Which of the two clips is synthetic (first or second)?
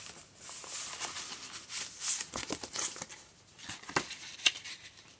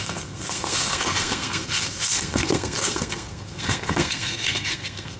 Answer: second